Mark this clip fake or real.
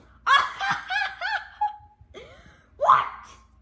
real